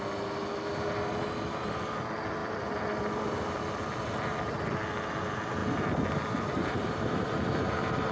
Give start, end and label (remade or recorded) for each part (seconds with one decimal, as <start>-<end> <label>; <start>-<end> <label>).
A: 0.0-2.4 recorded; 2.4-3.6 remade; 3.6-5.6 recorded; 5.6-8.1 remade